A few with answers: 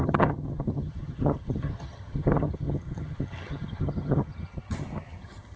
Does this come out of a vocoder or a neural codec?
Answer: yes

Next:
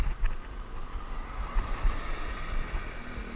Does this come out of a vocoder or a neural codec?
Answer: no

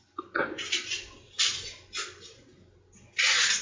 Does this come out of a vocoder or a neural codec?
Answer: no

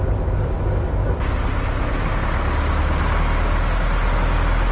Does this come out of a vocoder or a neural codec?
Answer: no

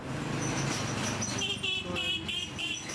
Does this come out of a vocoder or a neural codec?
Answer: no